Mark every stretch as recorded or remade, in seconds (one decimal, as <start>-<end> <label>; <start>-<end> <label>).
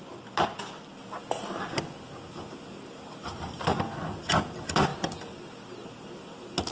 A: 0.0-6.7 recorded